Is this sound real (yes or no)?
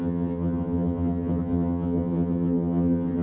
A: no